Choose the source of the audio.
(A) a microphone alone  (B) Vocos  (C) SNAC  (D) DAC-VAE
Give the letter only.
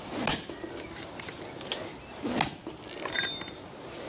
A